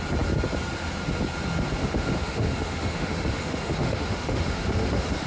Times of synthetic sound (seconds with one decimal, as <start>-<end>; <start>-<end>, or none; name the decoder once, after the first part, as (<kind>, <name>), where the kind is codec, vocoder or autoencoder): 1.8-5.3 (autoencoder, DAC-VAE)